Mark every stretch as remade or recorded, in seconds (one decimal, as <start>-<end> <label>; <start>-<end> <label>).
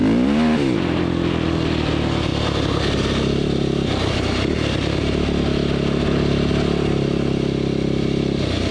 0.0-8.7 recorded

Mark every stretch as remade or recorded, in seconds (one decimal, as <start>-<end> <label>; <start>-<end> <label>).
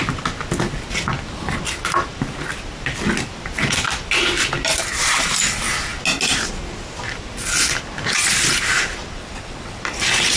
0.0-9.2 recorded; 9.2-9.8 remade; 9.8-10.4 recorded